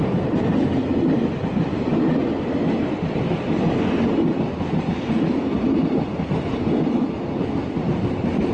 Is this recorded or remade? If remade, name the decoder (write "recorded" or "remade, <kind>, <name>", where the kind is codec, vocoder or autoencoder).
recorded